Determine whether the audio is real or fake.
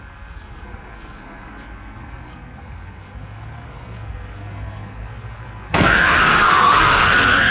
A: fake